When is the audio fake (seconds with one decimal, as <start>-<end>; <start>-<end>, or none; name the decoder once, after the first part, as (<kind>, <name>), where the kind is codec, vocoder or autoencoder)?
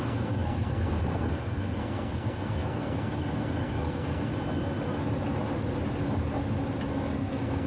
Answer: 0.0-4.3 (codec, SNAC); 6.9-7.7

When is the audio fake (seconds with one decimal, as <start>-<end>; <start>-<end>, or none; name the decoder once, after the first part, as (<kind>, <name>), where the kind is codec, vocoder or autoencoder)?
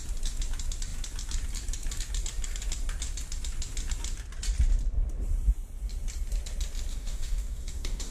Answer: 6.9-8.1 (codec, DAC)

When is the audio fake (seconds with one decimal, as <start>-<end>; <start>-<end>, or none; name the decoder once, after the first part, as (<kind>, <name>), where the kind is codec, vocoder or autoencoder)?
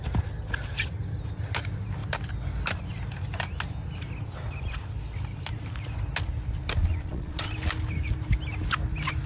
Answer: 6.8-7.5 (vocoder, Vocos)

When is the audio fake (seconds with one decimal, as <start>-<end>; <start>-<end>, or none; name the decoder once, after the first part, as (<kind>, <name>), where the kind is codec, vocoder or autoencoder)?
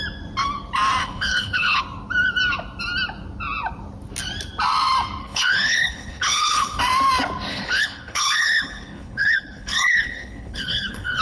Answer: 1.0-1.8 (codec, HILCodec); 5.2-6.8; 7.5-11.2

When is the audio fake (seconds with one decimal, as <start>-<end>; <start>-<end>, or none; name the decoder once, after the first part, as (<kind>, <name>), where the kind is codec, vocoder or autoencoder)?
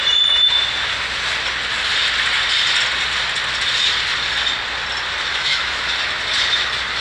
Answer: 5.3-5.9 (autoencoder, DAC-VAE)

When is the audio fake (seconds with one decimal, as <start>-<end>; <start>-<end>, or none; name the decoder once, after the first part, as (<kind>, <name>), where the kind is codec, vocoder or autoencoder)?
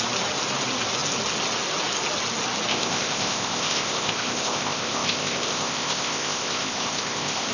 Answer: 2.7-7.5 (codec, ZipCodec)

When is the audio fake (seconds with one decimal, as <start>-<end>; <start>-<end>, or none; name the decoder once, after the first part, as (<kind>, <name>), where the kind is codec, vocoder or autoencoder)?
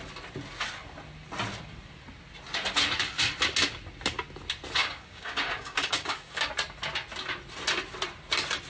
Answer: 4.8-6.5 (codec, DAC)